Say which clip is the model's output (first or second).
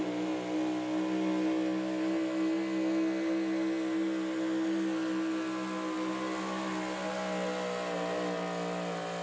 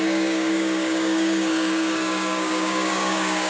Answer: second